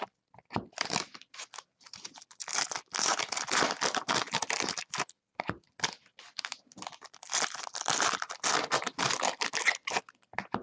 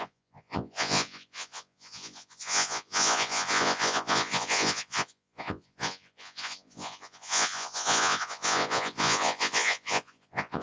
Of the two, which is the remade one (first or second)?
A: second